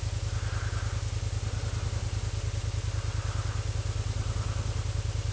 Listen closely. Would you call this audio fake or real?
real